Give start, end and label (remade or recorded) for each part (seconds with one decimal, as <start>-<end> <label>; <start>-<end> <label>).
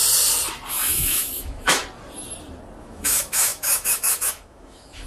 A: 0.0-0.7 recorded; 0.7-1.8 remade; 1.8-2.8 recorded; 2.8-5.1 remade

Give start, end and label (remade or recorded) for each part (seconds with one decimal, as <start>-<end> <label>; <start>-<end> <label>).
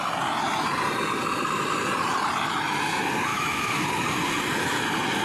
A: 0.0-3.3 recorded; 3.3-3.9 remade; 3.9-5.2 recorded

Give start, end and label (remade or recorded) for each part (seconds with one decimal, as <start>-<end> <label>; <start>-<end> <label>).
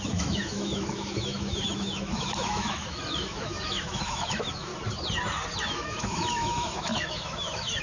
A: 0.0-4.7 remade; 4.7-5.6 recorded; 5.6-7.8 remade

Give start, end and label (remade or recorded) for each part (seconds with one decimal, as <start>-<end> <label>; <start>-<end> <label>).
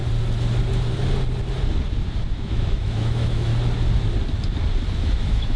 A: 0.0-2.3 recorded; 2.3-3.5 remade; 3.5-5.0 recorded; 5.0-5.6 remade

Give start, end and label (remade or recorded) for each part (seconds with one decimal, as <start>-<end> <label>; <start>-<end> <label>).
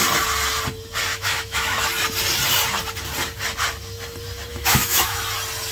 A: 0.0-1.1 recorded; 1.1-1.8 remade; 1.8-4.5 recorded; 4.5-5.2 remade; 5.2-5.7 recorded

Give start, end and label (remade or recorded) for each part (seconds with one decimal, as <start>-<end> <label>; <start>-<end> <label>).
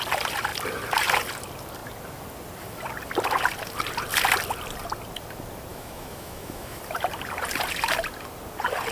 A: 0.0-5.7 recorded; 5.7-6.8 remade; 6.8-8.9 recorded